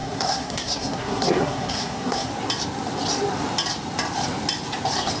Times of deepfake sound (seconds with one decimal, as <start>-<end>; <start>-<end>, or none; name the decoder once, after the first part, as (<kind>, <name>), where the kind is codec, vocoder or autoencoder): 0.0-2.3 (codec, SNAC)